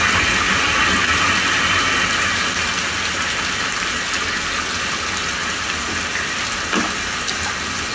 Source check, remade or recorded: recorded